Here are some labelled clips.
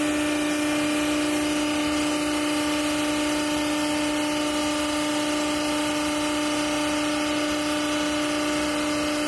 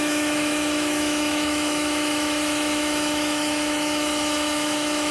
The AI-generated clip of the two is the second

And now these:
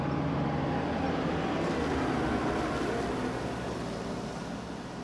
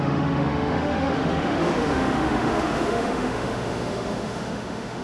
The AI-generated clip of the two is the second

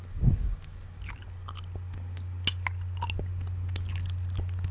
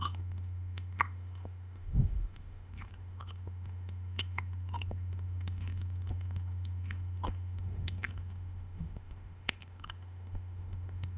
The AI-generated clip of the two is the second